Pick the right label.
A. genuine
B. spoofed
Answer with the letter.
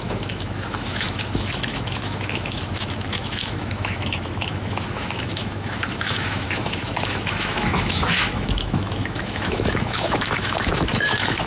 B